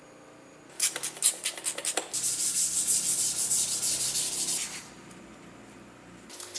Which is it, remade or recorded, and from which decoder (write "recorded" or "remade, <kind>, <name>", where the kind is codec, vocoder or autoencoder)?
recorded